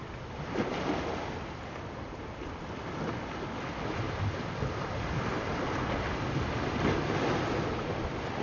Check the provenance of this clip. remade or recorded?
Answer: recorded